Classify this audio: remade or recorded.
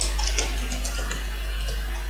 recorded